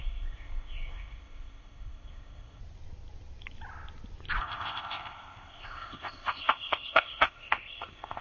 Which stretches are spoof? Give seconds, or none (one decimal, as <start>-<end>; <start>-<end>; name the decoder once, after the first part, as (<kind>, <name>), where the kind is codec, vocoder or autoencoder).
0.0-2.6 (codec, ZipCodec); 4.4-8.2